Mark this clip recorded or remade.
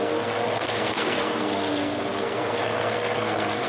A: remade